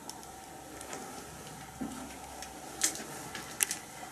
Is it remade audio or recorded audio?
recorded